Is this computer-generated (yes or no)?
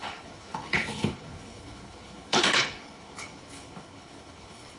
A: yes